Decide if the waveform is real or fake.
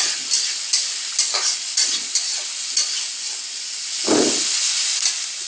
real